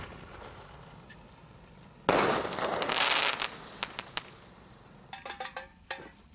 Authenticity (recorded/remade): recorded